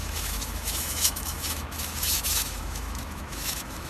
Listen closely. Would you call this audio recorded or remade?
remade